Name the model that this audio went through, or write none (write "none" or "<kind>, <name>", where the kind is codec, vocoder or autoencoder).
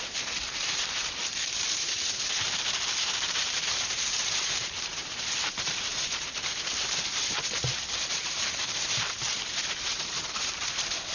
vocoder, BigVGAN v2